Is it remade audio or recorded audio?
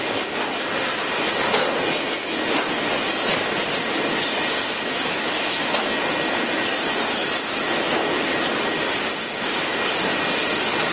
recorded